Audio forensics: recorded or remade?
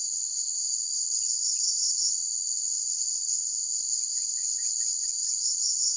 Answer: remade